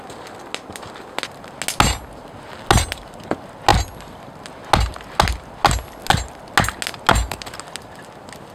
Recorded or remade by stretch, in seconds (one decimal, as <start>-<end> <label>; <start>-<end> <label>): 0.0-8.5 recorded